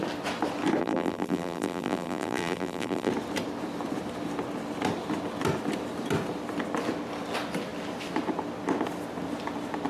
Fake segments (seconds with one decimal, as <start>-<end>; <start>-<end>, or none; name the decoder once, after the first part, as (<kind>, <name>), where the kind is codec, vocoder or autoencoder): 0.8-3.1 (vocoder, BigVGAN v2)